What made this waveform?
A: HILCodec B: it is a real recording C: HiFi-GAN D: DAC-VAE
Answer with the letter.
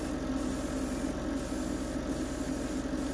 B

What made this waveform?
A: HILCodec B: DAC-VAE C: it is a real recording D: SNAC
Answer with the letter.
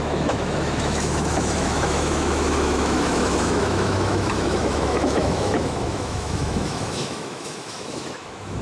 B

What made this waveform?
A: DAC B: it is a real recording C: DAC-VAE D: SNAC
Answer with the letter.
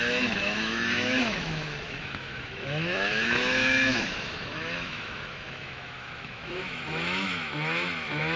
C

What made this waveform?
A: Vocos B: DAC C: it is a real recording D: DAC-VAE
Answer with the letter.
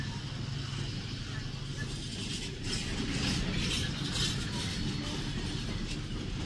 C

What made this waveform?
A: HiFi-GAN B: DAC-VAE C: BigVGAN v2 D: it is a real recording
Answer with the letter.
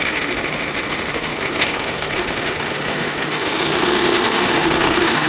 B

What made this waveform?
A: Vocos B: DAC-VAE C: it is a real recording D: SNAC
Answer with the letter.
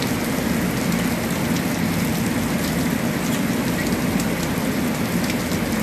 C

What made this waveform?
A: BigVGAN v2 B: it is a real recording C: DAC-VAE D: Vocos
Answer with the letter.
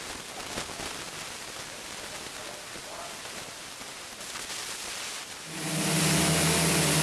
B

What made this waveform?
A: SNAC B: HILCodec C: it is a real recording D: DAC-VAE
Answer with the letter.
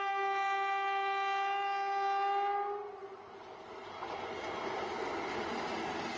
C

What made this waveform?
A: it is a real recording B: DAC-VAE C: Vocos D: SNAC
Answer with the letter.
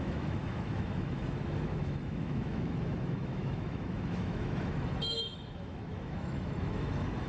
B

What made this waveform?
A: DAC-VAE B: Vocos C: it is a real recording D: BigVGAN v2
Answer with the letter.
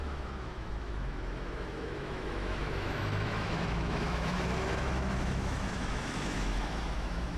A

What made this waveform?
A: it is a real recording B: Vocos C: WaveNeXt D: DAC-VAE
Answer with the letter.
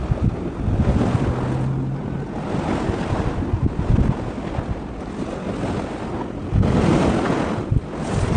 A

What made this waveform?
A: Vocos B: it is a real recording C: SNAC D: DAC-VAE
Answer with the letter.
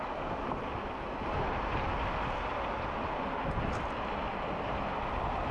B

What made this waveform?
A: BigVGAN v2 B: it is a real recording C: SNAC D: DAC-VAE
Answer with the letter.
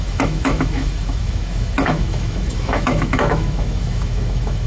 D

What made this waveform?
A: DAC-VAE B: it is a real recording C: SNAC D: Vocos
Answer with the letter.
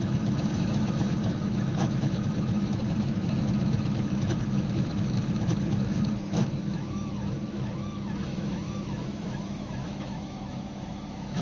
A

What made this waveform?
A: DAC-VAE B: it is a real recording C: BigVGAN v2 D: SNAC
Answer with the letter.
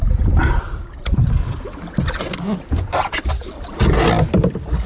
B